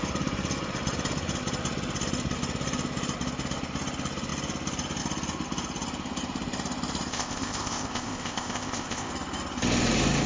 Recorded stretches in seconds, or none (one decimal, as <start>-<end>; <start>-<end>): 0.0-7.1; 9.1-10.3